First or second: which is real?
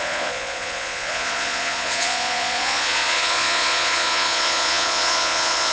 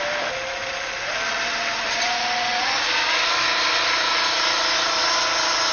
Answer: second